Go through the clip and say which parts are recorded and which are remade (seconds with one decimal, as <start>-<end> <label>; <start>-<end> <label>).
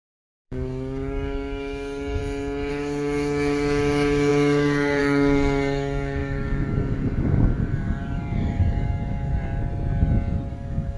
0.0-2.2 remade; 2.2-2.7 recorded; 2.7-9.3 remade; 9.3-10.5 recorded; 10.5-11.0 remade